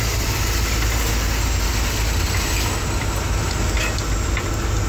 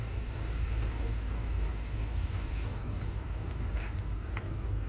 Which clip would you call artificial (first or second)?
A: second